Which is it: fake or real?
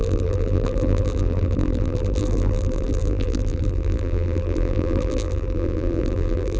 fake